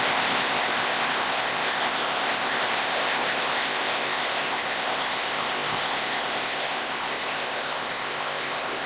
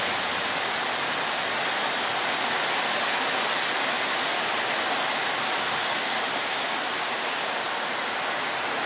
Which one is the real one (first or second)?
second